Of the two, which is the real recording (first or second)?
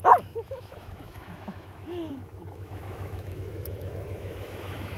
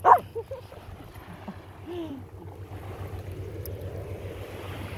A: second